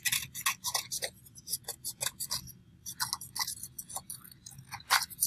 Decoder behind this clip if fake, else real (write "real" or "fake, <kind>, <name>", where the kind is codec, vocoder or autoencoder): real